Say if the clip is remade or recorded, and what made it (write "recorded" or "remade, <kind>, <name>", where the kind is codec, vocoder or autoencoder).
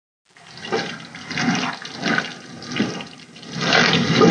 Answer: recorded